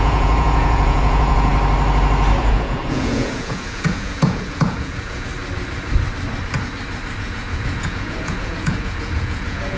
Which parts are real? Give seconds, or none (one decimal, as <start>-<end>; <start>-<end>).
1.5-2.4; 5.3-7.2

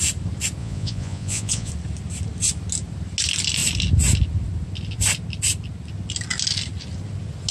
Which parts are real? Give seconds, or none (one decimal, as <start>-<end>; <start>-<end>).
0.0-0.6; 1.7-7.5

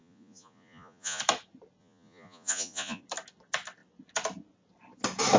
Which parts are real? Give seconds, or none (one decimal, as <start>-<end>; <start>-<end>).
1.2-1.8; 3.0-5.4

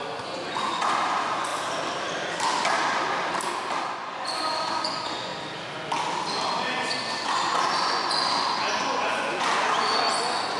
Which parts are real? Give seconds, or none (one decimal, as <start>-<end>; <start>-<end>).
1.5-3.9; 5.3-7.1

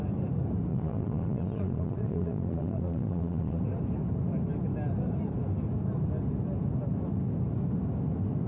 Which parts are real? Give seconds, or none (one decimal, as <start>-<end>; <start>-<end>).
0.0-0.7; 3.6-8.5

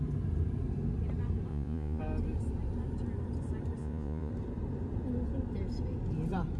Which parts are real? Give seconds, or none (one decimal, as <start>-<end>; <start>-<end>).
0.0-1.5; 2.0-3.8; 4.3-6.6